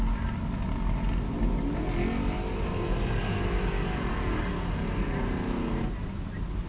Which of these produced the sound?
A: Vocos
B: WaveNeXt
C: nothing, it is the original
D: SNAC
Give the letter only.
C